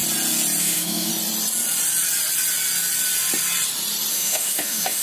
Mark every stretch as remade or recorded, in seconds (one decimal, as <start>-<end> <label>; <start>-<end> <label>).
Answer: 0.0-0.6 recorded; 0.6-1.1 remade; 1.1-4.1 recorded; 4.1-5.0 remade